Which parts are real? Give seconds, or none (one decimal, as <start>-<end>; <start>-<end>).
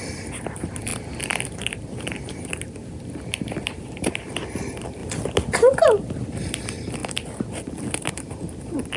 5.0-5.5